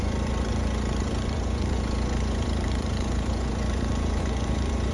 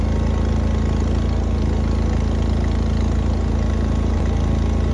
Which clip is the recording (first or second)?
second